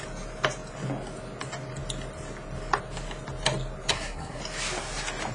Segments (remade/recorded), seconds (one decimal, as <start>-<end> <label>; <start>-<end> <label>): 0.0-3.9 recorded; 3.9-4.4 remade; 4.4-5.3 recorded